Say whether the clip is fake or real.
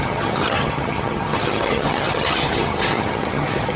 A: fake